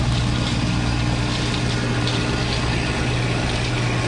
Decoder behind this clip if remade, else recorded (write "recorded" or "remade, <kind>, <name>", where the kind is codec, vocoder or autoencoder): recorded